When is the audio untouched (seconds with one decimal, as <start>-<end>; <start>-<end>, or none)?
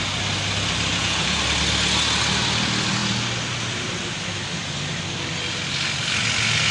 0.0-0.9; 1.4-6.7